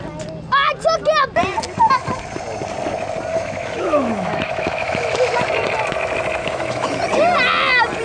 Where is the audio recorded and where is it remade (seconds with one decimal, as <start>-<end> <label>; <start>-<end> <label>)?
0.0-3.3 recorded; 3.3-5.4 remade; 5.4-6.4 recorded; 6.4-7.0 remade; 7.0-8.0 recorded